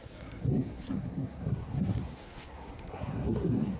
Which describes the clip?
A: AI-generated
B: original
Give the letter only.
A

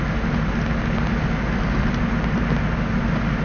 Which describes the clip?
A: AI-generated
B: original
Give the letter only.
B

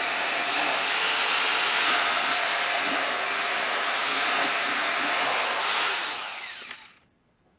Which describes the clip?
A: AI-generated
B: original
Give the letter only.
B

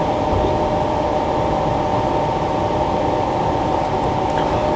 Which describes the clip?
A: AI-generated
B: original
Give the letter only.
B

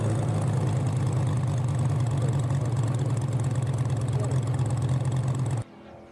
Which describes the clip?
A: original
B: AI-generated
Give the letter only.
A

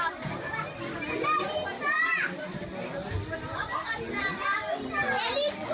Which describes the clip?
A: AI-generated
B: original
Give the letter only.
B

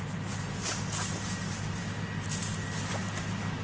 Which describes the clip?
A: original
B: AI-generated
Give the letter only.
A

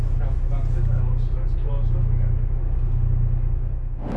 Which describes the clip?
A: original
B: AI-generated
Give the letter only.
A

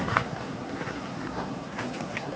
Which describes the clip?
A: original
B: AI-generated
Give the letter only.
B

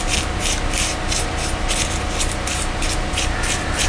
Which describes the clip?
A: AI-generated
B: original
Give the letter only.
B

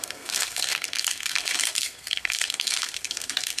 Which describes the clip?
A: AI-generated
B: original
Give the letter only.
A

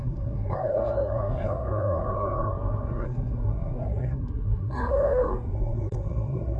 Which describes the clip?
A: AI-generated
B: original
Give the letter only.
A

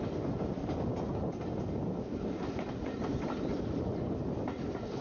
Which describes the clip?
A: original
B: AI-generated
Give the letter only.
A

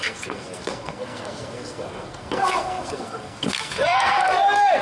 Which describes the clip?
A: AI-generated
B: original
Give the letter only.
A